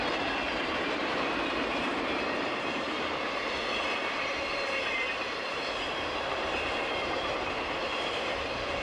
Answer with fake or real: fake